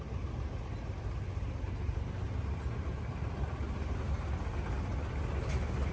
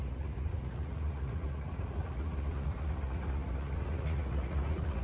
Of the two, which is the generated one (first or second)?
second